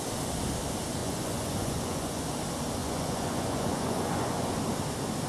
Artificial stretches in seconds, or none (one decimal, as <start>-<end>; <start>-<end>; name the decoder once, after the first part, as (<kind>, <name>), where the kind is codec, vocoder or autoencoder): 1.0-2.2 (vocoder, Vocos); 2.8-4.5